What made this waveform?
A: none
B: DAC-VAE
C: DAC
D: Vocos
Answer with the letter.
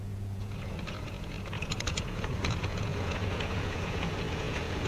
D